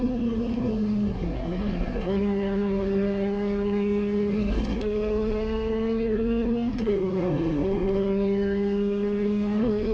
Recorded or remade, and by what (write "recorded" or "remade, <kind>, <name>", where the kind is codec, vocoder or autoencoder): remade, codec, SNAC